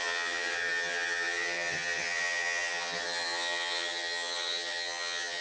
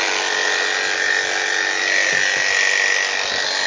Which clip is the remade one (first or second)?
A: first